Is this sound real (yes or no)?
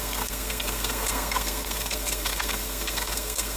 no